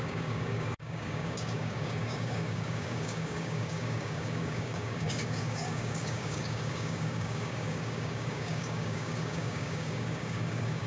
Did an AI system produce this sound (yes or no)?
yes